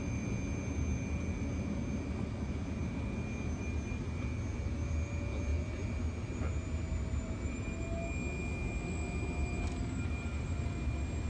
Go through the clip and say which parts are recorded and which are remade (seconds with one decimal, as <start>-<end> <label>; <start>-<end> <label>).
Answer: 0.0-11.3 recorded